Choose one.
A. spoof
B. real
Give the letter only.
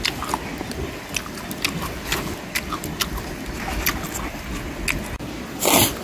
B